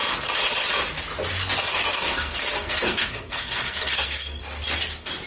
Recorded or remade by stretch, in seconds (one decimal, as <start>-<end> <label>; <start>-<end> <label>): 0.0-1.7 recorded; 1.7-4.4 remade; 4.4-5.3 recorded